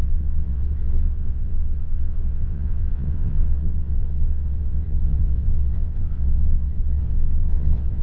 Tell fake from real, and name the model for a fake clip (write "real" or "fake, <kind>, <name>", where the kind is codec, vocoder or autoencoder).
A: fake, vocoder, WaveNeXt